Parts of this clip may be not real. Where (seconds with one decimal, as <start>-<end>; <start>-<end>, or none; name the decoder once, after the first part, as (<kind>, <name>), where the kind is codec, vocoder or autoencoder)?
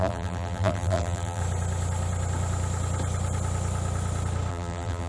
0.0-1.4 (vocoder, BigVGAN v2); 4.5-5.1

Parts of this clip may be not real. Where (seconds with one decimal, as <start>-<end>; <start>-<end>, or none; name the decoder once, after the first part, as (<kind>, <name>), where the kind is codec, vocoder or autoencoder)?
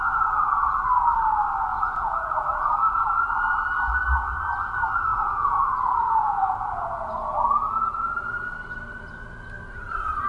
1.7-3.3 (vocoder, Vocos); 5.1-8.4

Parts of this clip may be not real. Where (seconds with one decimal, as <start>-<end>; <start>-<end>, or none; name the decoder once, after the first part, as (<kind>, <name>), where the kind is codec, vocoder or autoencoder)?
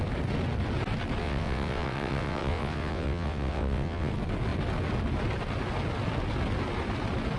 1.2-4.1 (vocoder, WaveNeXt)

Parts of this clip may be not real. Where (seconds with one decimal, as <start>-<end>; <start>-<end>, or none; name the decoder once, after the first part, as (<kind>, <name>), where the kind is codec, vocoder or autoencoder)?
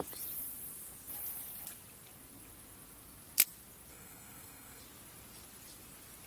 3.9-4.8 (codec, SNAC)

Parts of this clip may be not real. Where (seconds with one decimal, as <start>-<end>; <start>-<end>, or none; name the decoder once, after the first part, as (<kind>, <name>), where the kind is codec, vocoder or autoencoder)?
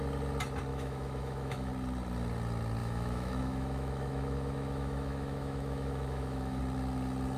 0.7-1.7 (autoencoder, DAC-VAE); 2.8-6.6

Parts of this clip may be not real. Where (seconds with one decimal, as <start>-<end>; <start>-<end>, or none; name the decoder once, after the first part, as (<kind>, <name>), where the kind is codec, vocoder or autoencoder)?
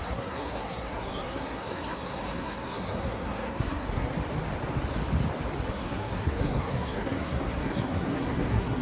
0.0-4.1 (codec, SNAC); 5.7-8.8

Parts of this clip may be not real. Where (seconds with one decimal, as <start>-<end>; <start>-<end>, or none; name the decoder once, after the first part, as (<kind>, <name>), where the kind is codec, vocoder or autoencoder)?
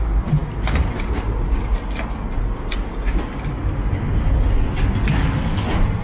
none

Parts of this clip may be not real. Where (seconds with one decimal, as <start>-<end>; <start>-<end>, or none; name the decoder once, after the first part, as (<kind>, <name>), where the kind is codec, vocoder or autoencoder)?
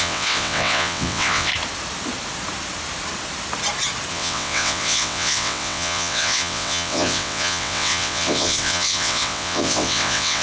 0.0-1.5 (vocoder, WaveNeXt); 4.1-10.4